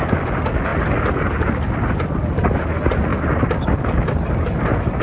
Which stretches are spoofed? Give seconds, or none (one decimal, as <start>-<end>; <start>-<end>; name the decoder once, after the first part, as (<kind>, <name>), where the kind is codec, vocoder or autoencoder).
none

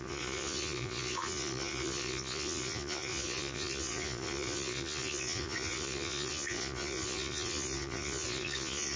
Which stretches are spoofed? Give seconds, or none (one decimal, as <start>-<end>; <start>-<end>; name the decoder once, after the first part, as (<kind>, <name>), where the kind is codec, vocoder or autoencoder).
0.0-9.0 (vocoder, Vocos)

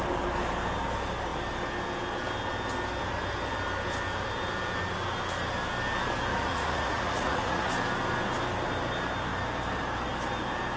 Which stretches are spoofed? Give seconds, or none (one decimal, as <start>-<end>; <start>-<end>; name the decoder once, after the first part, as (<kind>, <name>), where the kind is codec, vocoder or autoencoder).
6.3-7.7 (vocoder, Vocos)

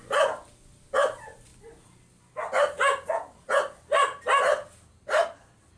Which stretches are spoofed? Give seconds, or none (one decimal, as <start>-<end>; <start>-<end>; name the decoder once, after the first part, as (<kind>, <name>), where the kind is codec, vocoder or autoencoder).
none

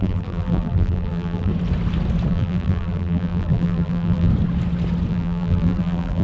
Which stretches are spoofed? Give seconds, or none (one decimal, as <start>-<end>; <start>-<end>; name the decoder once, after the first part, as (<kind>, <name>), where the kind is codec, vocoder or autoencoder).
0.0-1.5 (vocoder, BigVGAN v2); 2.3-4.3; 5.1-6.2

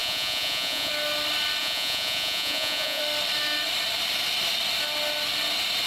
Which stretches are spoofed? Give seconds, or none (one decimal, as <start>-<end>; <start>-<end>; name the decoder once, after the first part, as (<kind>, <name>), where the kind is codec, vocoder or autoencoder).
0.0-0.9 (vocoder, Vocos); 1.6-3.0

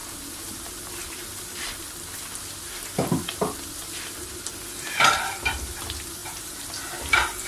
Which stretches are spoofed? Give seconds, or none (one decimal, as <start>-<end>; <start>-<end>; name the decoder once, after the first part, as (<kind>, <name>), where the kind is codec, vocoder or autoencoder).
0.0-7.5 (vocoder, BigVGAN v2)